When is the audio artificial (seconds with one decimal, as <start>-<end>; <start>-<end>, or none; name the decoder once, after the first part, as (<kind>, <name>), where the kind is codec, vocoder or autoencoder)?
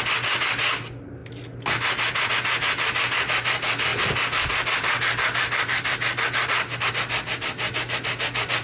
none